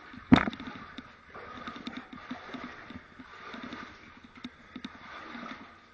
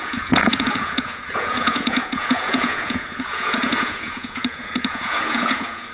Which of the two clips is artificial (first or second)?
second